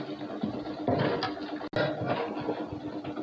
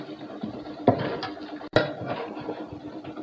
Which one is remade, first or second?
second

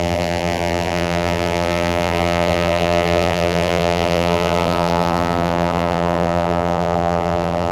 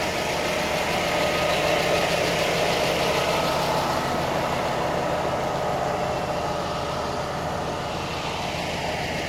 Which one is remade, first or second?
first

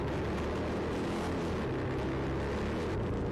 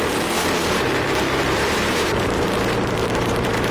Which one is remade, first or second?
second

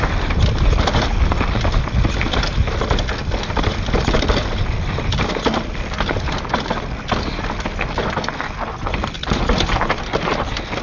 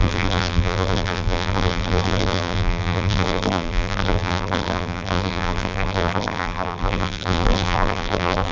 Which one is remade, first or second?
second